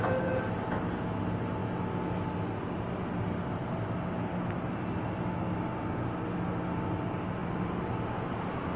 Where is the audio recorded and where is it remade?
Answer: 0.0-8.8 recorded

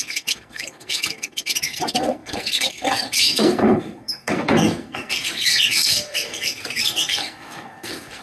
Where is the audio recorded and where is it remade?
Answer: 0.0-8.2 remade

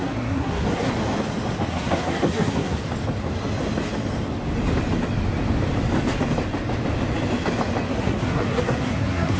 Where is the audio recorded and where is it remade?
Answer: 0.0-0.9 remade; 0.9-1.7 recorded; 1.7-2.8 remade; 2.8-7.9 recorded; 7.9-9.4 remade

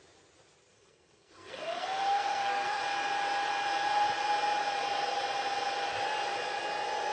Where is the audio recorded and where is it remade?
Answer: 0.0-0.7 recorded; 0.7-2.8 remade; 2.8-7.1 recorded